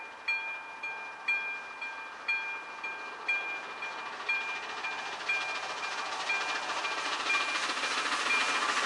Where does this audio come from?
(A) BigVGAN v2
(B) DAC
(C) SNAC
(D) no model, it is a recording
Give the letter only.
D